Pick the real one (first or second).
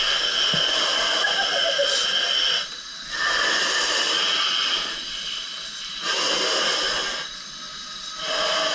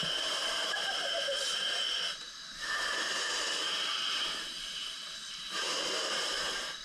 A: first